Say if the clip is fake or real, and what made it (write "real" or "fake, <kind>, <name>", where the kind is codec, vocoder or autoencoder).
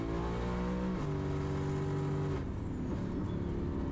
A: real